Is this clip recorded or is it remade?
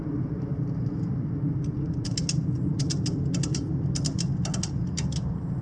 recorded